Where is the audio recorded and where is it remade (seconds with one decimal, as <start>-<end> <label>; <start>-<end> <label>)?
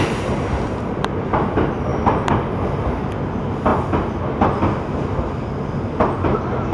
0.0-6.7 recorded